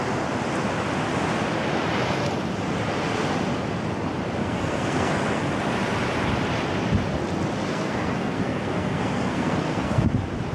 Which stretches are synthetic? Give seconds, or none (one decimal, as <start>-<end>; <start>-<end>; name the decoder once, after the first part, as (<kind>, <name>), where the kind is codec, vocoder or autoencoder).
4.4-5.4 (codec, SNAC); 7.7-10.1